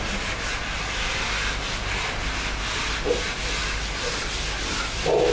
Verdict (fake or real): real